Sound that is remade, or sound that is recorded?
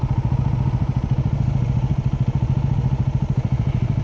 recorded